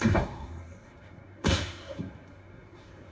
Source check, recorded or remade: remade